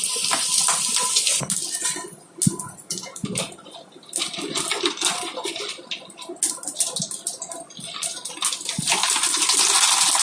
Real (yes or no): yes